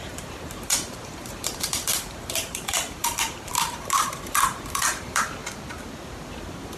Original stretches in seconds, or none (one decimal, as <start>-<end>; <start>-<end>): 5.4-6.8